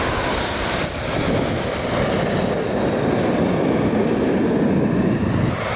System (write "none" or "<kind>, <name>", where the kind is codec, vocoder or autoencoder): none